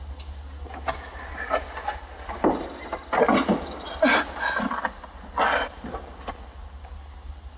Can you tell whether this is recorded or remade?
recorded